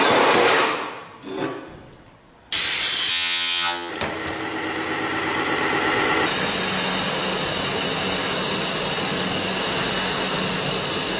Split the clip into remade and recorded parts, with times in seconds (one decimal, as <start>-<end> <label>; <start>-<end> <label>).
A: 0.0-3.1 recorded; 3.1-3.9 remade; 3.9-11.2 recorded